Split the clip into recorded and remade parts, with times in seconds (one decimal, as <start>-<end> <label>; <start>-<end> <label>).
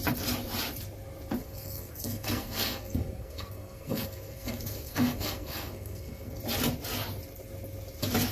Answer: 0.0-1.4 recorded; 1.4-6.4 remade; 6.4-8.3 recorded